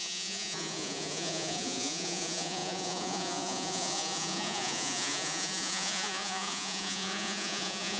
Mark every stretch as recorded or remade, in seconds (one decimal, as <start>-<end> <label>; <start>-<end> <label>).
0.0-8.0 remade